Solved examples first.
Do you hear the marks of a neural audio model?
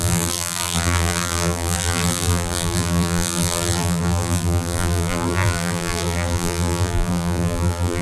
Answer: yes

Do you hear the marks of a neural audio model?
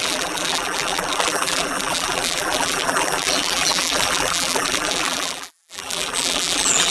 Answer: yes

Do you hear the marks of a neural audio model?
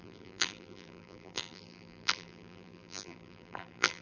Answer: yes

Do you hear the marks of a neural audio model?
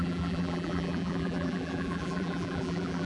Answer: yes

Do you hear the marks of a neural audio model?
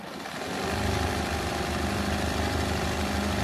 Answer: yes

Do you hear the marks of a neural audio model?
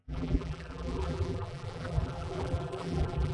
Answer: yes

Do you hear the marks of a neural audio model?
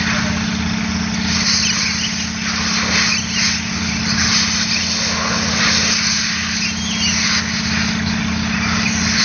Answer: no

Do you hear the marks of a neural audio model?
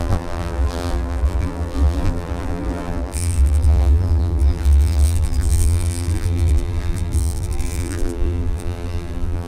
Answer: yes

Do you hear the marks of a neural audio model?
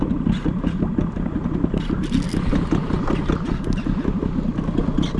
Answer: no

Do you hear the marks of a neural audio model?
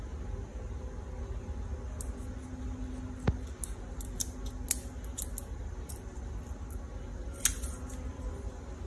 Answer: no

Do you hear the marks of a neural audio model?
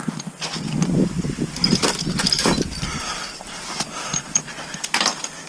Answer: yes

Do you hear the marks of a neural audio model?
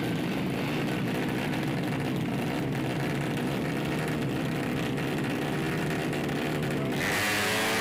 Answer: no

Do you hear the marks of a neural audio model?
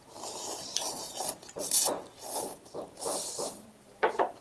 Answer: yes